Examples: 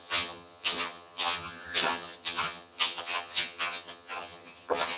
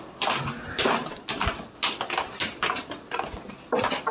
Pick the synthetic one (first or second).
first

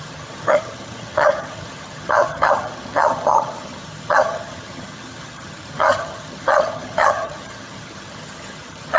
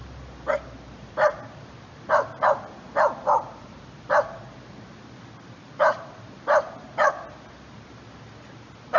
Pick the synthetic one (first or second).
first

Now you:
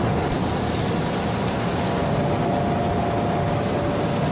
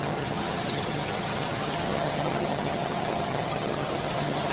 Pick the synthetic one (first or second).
second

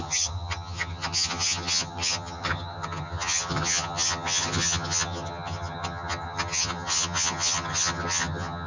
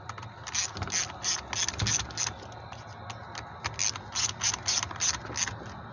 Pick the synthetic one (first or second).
first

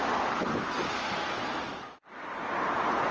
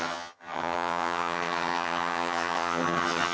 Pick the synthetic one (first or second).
second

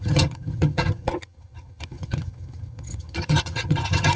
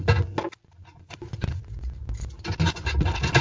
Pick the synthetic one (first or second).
first